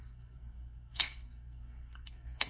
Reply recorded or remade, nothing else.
remade